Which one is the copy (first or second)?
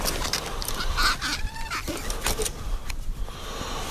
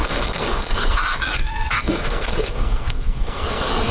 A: second